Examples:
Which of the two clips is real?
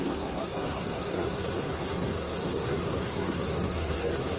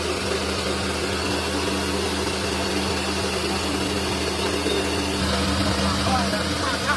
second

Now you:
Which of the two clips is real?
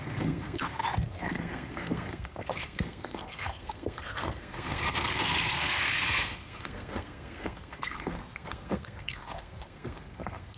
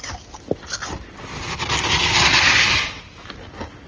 second